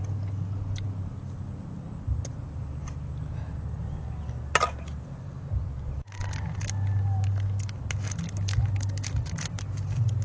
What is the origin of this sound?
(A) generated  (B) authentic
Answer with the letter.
B